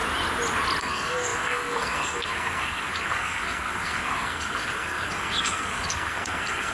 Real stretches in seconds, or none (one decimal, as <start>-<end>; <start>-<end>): 0.0-0.8